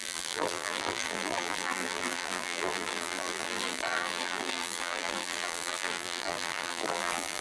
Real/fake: fake